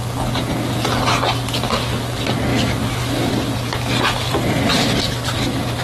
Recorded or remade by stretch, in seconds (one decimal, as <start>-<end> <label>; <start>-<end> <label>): 0.0-5.8 recorded